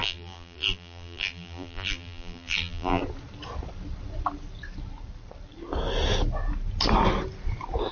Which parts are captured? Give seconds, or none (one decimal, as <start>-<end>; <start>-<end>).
3.0-7.9